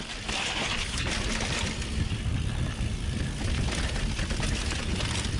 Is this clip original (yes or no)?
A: yes